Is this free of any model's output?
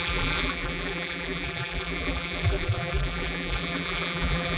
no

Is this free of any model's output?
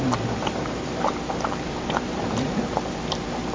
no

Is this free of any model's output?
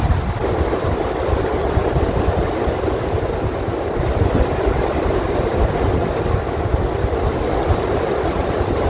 no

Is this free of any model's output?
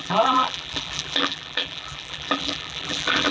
no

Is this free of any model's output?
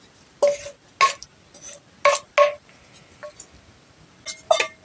yes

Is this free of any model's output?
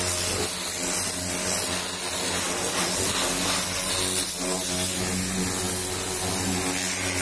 yes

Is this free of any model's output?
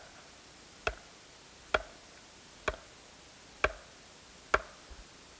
yes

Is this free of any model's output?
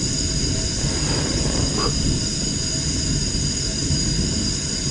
yes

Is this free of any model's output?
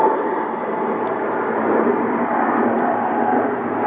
yes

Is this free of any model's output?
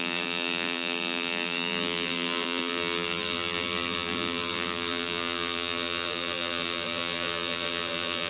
no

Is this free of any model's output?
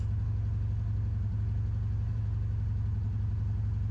yes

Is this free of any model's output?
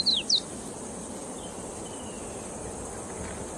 yes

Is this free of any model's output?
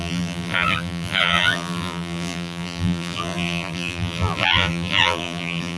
no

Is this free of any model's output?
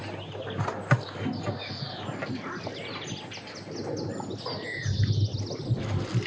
yes